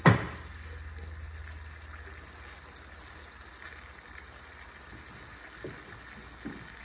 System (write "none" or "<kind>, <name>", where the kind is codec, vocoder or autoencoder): none